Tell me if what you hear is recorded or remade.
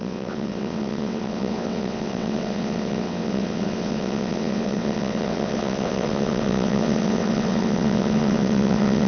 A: remade